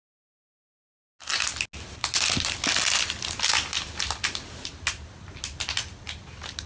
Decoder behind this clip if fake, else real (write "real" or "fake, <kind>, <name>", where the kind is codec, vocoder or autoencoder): real